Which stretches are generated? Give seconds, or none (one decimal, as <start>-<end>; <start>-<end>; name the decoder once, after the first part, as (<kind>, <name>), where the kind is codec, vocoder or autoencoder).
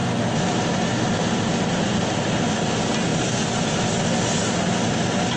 none